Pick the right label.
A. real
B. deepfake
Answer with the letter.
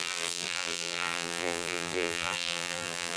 B